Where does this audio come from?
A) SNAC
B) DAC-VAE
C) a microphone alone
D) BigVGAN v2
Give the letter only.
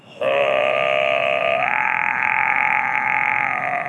B